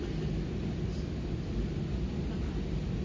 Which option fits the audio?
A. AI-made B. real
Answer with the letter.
B